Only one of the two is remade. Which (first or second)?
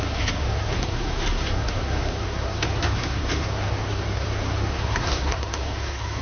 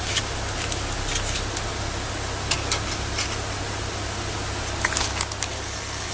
first